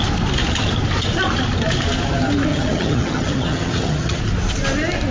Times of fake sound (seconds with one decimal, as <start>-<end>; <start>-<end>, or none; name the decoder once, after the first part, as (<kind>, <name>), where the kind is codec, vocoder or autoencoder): 2.5-4.2 (vocoder, HiFi-GAN)